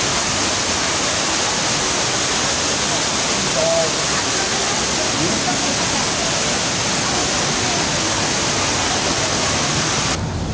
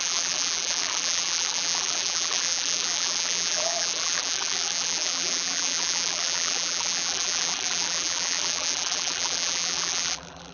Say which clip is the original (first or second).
first